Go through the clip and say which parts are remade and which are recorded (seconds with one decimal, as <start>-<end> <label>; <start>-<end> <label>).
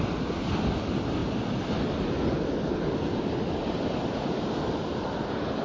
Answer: 0.0-5.6 recorded